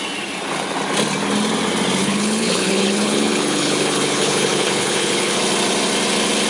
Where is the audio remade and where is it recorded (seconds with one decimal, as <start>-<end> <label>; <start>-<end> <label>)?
0.0-2.0 recorded; 2.0-5.4 remade; 5.4-6.5 recorded